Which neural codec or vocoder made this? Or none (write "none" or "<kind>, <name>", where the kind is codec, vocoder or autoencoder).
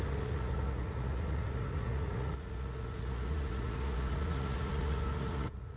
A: vocoder, Vocos